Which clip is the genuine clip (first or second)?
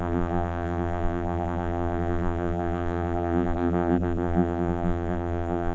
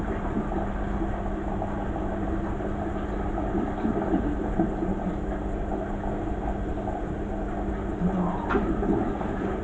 second